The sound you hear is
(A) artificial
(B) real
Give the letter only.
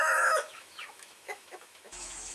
A